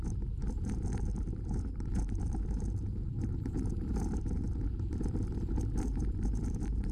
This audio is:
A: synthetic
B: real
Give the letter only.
A